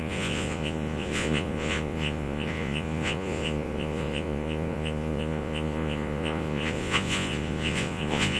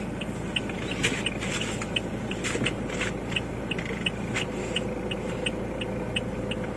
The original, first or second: second